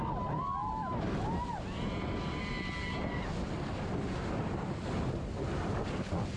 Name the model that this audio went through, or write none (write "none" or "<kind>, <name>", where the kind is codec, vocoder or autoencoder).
none